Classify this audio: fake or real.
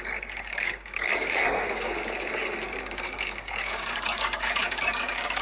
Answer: fake